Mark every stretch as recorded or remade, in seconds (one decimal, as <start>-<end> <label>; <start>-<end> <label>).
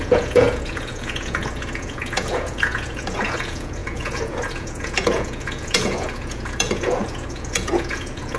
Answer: 0.0-8.4 remade